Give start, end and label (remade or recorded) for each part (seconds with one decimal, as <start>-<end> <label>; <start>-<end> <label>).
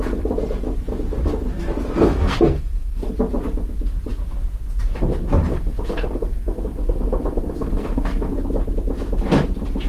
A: 0.0-2.1 recorded; 2.1-3.1 remade; 3.1-5.5 recorded; 5.5-8.3 remade; 8.3-9.9 recorded